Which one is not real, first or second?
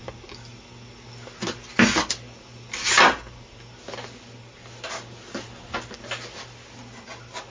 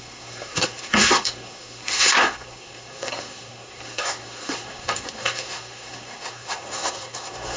second